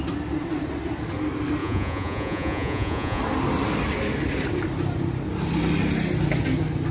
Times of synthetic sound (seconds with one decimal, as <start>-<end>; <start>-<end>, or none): 1.6-3.2